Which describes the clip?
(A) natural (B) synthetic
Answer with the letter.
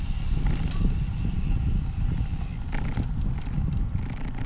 A